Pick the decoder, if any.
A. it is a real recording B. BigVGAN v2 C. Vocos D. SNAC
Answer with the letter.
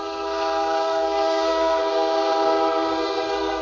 D